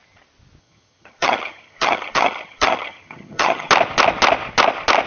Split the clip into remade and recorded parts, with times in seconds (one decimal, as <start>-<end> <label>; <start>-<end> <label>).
0.0-0.6 recorded; 0.6-3.7 remade; 3.7-5.1 recorded